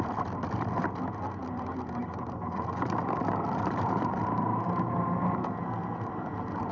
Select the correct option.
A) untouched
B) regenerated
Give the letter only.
A